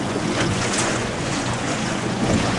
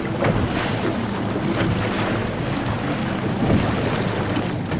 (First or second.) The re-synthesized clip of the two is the first